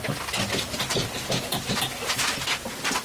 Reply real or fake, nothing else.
real